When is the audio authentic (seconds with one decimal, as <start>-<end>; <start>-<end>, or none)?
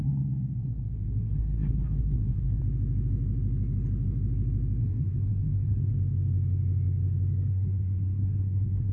0.0-0.6; 2.6-4.8; 5.9-7.5